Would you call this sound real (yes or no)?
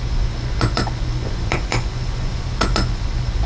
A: no